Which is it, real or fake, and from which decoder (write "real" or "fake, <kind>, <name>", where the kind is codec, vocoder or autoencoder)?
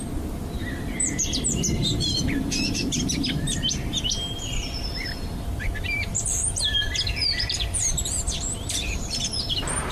fake, vocoder, BigVGAN v2